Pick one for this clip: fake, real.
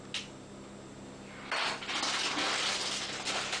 real